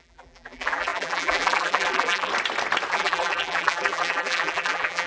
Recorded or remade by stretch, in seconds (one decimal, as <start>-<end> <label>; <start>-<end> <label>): 0.0-2.3 remade; 2.3-2.9 recorded; 2.9-5.1 remade